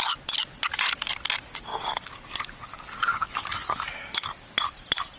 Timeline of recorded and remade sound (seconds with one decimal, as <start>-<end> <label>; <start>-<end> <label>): 0.0-1.7 recorded; 1.7-4.6 remade; 4.6-5.2 recorded